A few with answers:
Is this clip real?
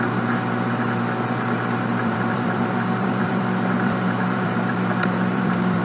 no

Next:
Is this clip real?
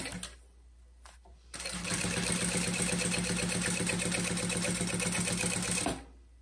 yes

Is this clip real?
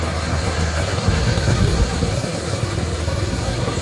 no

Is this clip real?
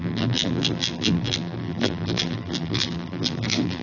no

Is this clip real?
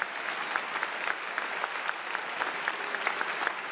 yes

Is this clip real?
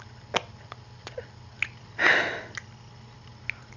yes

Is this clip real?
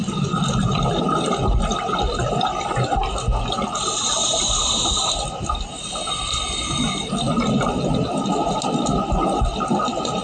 yes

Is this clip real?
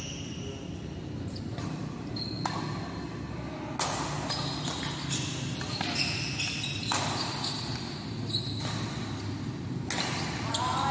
yes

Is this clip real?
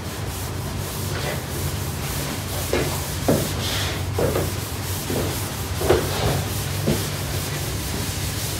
no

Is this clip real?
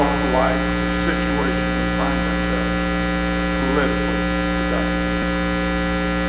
yes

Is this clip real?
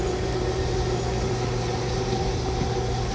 yes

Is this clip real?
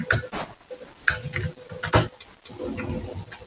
yes